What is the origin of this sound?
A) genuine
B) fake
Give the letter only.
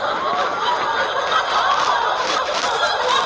A